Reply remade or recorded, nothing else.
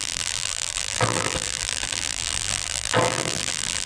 remade